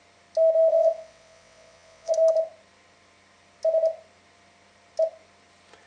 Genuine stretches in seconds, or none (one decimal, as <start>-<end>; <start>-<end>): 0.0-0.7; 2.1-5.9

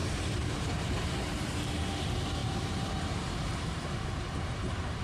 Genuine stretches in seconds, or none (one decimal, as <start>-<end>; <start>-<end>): 1.5-2.4

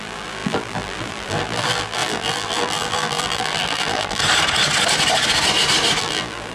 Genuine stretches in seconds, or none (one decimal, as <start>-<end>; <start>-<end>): 4.2-6.0

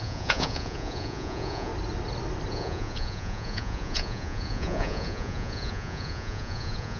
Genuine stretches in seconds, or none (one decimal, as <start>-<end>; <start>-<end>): 1.7-2.5

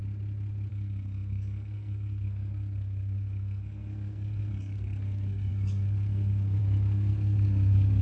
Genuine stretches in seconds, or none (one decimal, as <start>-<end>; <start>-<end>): 0.0-0.7

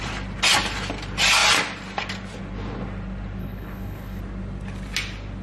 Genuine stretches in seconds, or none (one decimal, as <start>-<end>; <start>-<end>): 0.0-3.4; 4.2-5.4